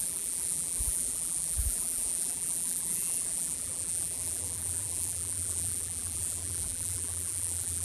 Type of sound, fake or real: fake